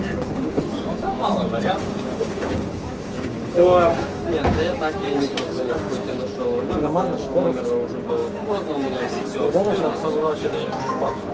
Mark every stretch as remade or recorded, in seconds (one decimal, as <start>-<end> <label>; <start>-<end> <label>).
0.0-11.3 remade